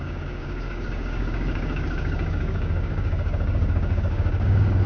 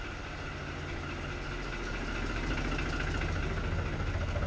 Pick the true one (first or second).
second